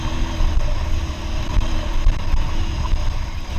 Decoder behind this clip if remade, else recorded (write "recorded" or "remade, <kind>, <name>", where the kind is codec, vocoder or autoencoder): recorded